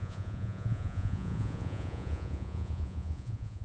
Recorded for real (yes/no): no